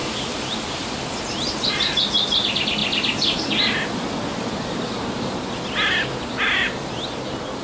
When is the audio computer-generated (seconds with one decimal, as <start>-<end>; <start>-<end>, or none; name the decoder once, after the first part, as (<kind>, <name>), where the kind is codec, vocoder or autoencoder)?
0.0-1.2 (vocoder, BigVGAN v2); 2.8-3.4